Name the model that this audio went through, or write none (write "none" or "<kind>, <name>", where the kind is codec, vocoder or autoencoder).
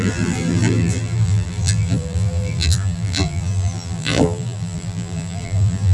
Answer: vocoder, BigVGAN v2